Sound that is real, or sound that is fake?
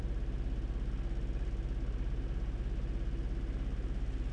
real